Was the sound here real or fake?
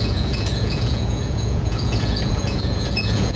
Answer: fake